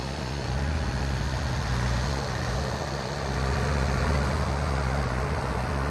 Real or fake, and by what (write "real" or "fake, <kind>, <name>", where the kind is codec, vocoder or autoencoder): fake, vocoder, Vocos